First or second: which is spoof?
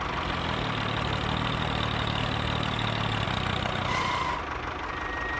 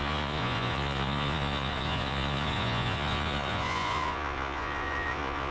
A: second